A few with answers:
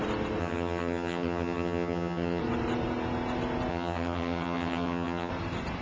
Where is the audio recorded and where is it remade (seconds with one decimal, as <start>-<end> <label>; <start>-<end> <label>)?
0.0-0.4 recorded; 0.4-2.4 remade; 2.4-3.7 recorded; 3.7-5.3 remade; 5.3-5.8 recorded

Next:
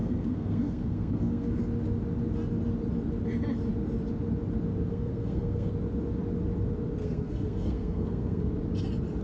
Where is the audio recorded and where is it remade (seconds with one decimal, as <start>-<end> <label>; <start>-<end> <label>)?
0.0-1.6 remade; 1.6-4.9 recorded; 4.9-5.7 remade; 5.7-7.0 recorded; 7.0-8.5 remade; 8.5-9.2 recorded

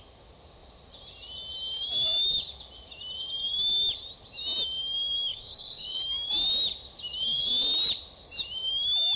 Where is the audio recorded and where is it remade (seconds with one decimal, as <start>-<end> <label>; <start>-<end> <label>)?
0.0-5.3 recorded; 5.3-6.0 remade; 6.0-9.2 recorded

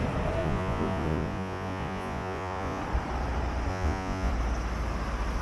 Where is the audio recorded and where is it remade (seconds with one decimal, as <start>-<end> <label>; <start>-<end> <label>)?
0.0-0.4 recorded; 0.4-2.8 remade; 2.8-3.7 recorded; 3.7-4.3 remade; 4.3-5.4 recorded